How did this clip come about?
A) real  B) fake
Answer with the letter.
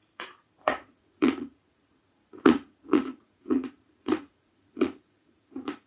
B